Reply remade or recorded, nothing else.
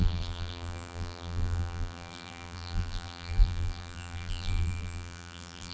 remade